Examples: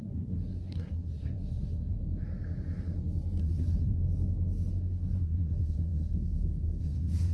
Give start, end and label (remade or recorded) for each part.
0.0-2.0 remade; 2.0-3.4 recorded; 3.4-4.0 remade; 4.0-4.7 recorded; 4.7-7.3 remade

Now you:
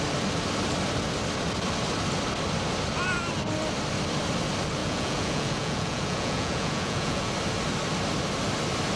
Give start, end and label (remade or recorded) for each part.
0.0-4.8 recorded; 4.8-7.3 remade; 7.3-9.0 recorded

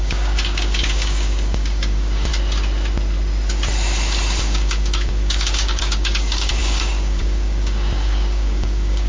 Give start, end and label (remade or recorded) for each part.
0.0-2.3 remade; 2.3-4.4 recorded; 4.4-9.1 remade

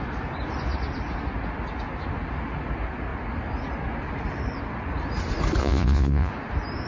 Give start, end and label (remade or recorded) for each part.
0.0-5.6 recorded; 5.6-6.3 remade; 6.3-6.9 recorded

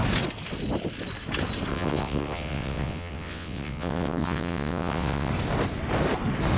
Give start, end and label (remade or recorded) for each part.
0.0-1.7 recorded; 1.7-5.3 remade; 5.3-6.6 recorded